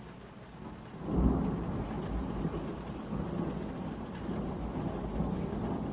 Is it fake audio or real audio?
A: real